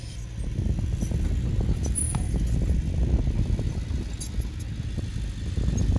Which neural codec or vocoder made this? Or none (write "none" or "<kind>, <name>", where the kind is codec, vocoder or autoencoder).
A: none